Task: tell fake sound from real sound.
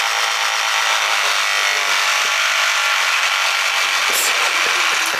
real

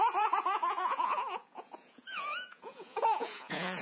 fake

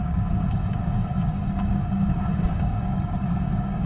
fake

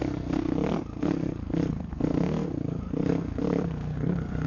fake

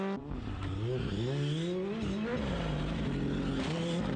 real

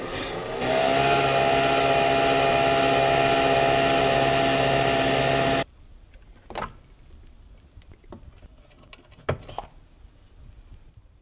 real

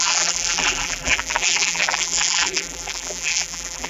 fake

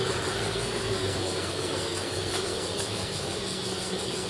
fake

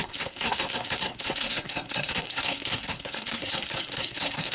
fake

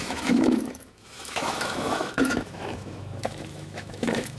fake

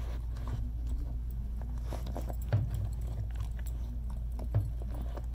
real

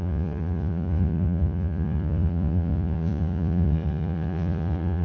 fake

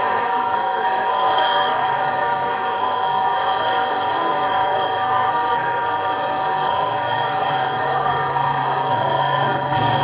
fake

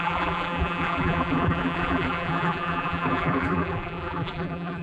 fake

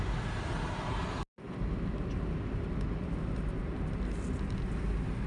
real